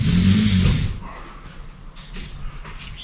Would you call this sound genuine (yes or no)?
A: yes